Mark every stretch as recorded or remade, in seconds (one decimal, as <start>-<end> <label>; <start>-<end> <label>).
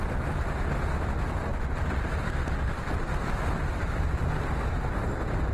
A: 0.0-1.5 remade; 1.5-4.5 recorded; 4.5-5.5 remade